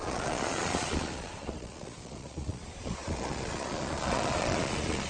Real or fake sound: fake